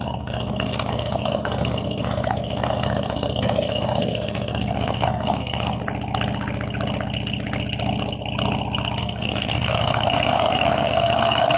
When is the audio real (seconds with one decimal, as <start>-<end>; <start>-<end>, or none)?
5.8-9.0